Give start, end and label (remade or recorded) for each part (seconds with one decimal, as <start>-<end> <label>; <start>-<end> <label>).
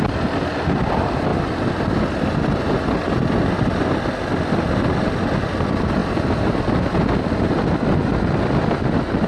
0.0-9.3 recorded